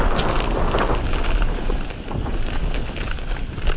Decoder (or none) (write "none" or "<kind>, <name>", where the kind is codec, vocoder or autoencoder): none